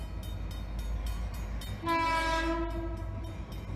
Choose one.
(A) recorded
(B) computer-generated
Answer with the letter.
A